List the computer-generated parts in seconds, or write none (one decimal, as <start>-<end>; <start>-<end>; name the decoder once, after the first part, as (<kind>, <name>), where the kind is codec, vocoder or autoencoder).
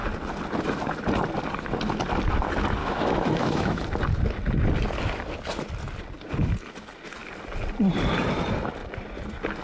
2.8-3.8 (autoencoder, DAC-VAE)